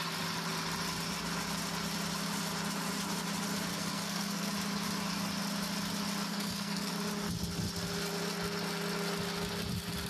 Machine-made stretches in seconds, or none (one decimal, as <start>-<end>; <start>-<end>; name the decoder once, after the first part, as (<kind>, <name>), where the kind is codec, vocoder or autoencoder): 3.7-4.5 (codec, SNAC); 6.3-6.9